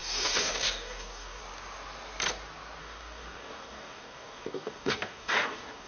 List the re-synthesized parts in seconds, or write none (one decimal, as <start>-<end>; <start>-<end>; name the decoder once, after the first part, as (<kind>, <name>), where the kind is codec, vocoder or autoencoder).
0.0-1.4 (codec, DAC); 2.8-5.9